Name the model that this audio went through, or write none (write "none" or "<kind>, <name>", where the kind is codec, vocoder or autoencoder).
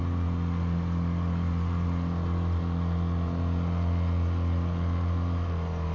none